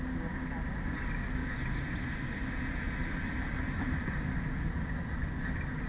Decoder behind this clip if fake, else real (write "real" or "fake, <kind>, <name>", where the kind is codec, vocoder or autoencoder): real